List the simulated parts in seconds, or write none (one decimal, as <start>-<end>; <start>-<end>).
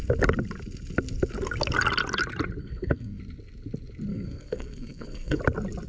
2.6-3.2; 4.1-5.4